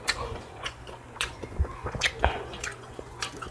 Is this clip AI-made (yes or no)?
yes